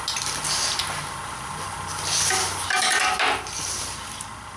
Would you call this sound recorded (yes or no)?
yes